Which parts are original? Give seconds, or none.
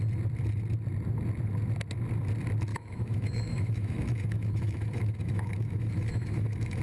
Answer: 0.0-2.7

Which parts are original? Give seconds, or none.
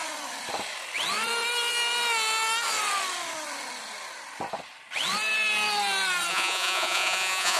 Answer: 0.0-6.3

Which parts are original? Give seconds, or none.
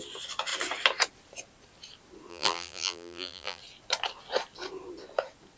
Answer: 0.0-2.3; 3.6-5.6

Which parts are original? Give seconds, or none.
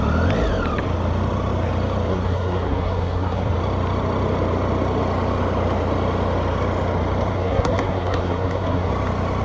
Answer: 0.0-2.1; 3.5-7.3; 8.9-9.4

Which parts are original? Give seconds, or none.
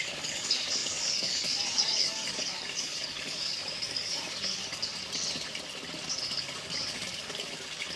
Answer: 4.9-6.4